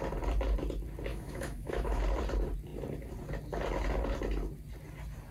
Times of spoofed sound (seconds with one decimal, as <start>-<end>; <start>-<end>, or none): 1.1-2.0